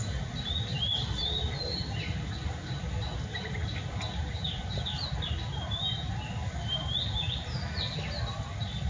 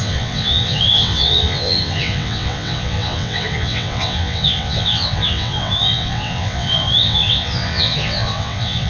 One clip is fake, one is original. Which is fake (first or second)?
second